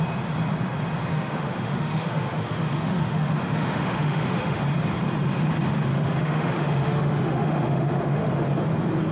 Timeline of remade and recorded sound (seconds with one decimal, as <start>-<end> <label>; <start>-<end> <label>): 0.0-1.1 recorded; 1.1-4.6 remade; 4.6-5.9 recorded; 5.9-8.5 remade; 8.5-9.1 recorded